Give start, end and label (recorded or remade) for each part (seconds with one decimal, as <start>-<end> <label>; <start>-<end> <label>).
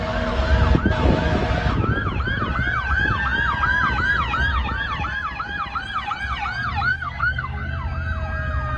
0.0-6.9 recorded; 6.9-7.7 remade; 7.7-8.8 recorded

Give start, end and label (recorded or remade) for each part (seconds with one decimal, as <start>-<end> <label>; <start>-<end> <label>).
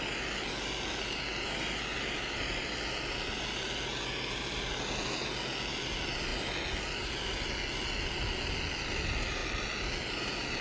0.0-10.6 recorded